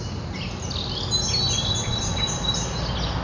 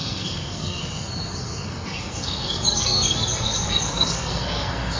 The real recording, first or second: first